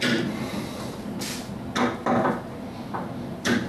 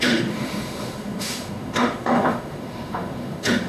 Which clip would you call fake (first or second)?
second